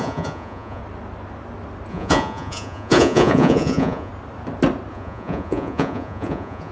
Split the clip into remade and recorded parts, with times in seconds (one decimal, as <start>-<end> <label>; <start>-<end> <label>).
0.0-0.8 remade; 0.8-1.9 recorded; 1.9-4.1 remade; 4.1-4.9 recorded; 4.9-6.7 remade